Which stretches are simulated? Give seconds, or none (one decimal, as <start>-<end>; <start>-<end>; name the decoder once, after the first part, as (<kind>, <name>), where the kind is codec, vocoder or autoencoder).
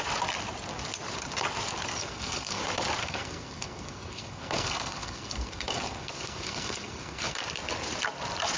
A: 2.0-2.6 (codec, SNAC); 3.0-7.4